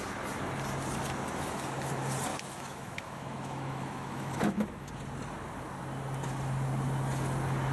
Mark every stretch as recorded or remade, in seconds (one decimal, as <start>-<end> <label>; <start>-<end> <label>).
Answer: 0.0-2.3 recorded; 2.3-4.9 remade; 4.9-7.7 recorded